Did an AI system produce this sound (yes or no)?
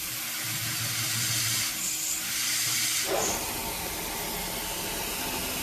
no